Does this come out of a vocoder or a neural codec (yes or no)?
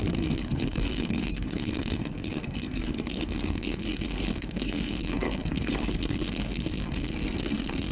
yes